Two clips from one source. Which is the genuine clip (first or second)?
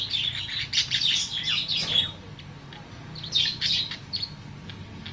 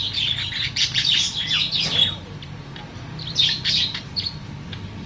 first